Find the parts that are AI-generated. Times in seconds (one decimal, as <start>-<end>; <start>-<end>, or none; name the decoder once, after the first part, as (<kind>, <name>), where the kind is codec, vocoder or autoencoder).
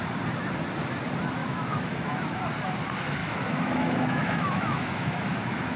1.4-2.4 (autoencoder, DAC-VAE); 3.2-5.8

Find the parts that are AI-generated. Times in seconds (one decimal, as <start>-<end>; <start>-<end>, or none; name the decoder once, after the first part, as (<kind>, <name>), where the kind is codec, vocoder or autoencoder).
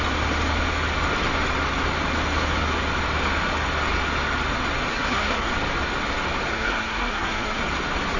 4.9-5.5 (codec, SNAC); 6.5-7.6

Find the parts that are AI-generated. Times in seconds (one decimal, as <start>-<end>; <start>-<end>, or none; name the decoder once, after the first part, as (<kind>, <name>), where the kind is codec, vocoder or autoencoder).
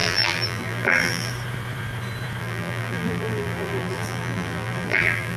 0.0-1.3 (vocoder, BigVGAN v2); 2.4-5.4